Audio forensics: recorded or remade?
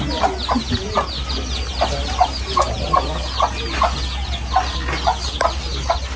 recorded